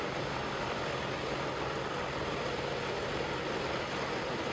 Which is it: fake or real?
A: real